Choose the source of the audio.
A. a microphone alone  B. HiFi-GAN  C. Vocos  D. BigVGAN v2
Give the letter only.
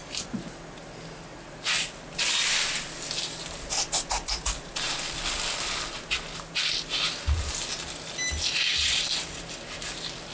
A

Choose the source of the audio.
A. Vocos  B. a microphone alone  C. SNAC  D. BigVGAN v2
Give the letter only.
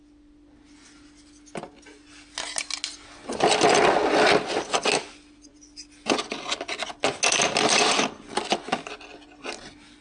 B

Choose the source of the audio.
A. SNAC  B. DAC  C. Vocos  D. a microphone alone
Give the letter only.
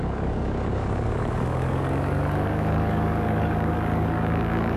B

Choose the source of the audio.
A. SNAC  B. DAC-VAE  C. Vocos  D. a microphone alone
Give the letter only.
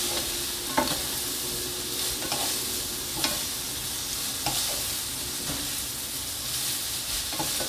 D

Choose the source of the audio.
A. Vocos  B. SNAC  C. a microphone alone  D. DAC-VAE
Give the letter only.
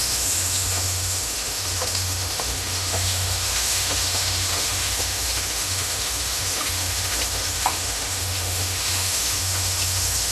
D